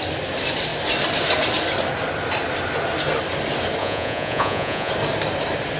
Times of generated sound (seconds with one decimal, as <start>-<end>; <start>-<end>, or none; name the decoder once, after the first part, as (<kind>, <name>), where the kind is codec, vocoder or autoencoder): 3.8-4.9 (vocoder, Vocos)